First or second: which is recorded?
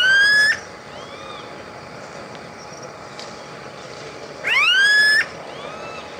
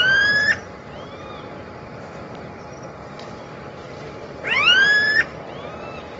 first